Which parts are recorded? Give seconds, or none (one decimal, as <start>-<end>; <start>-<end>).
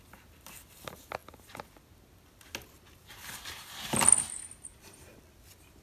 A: 0.0-5.8